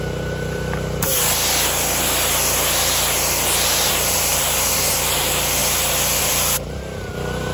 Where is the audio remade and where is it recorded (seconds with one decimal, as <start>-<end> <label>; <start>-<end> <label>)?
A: 0.0-1.1 remade; 1.1-3.9 recorded; 3.9-5.6 remade; 5.6-6.2 recorded; 6.2-7.5 remade